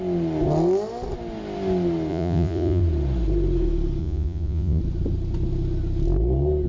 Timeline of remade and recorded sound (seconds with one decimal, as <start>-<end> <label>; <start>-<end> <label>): 0.0-2.1 recorded; 2.1-2.8 remade; 2.8-4.0 recorded; 4.0-4.8 remade; 4.8-6.7 recorded